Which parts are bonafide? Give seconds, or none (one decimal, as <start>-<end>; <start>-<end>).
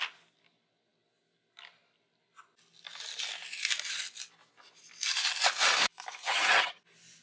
0.0-6.2; 6.8-7.2